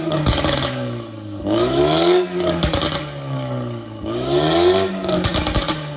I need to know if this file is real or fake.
fake